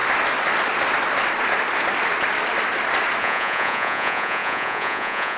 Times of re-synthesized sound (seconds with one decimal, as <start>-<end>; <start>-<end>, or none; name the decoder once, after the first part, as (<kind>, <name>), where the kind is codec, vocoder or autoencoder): 3.2-5.4 (vocoder, Vocos)